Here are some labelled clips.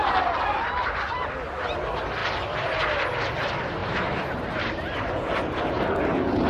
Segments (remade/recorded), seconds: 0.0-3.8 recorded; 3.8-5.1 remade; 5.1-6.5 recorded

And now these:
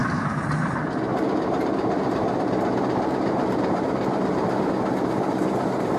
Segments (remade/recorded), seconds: 0.0-0.6 remade; 0.6-1.1 recorded; 1.1-4.7 remade; 4.7-6.0 recorded

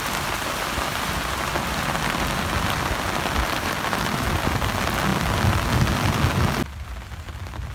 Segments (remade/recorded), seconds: 0.0-7.7 recorded

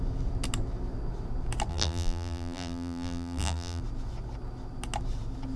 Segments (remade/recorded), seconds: 0.0-1.7 recorded; 1.7-3.8 remade; 3.8-5.6 recorded

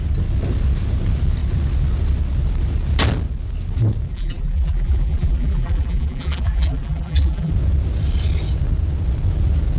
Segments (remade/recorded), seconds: 0.0-4.1 recorded; 4.1-7.5 remade; 7.5-9.8 recorded

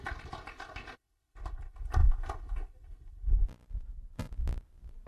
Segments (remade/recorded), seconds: 0.0-5.1 recorded